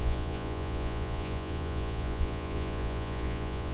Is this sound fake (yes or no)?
yes